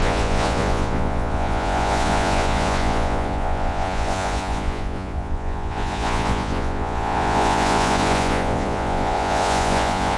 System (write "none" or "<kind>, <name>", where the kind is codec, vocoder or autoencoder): vocoder, Vocos